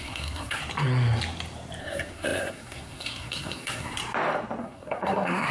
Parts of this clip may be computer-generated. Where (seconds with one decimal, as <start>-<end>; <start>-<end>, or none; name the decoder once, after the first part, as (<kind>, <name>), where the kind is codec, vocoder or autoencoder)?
0.0-0.6 (codec, SNAC); 1.8-4.0; 4.6-5.5